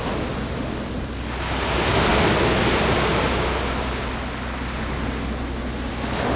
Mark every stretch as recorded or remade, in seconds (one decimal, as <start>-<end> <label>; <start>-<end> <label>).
0.0-6.4 recorded